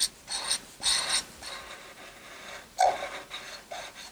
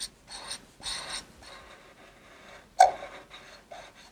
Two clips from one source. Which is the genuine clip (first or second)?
second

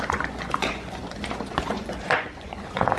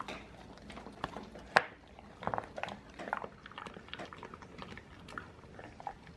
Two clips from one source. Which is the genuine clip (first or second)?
second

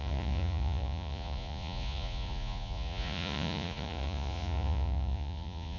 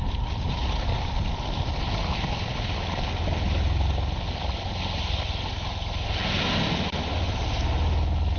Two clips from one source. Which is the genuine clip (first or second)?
second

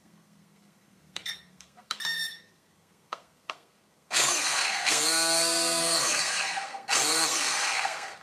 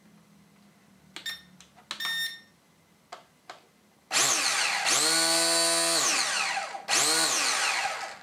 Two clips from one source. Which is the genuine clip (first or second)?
second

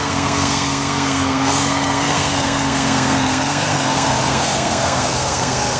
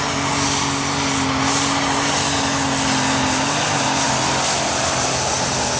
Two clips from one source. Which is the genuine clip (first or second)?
second